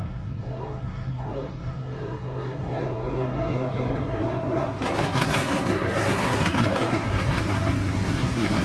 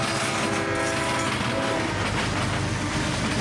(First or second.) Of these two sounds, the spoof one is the first